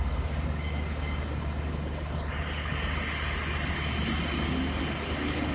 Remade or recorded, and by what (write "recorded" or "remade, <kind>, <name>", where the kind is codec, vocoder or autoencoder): recorded